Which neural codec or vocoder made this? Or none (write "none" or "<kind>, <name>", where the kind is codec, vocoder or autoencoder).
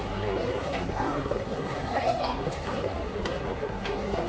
codec, SNAC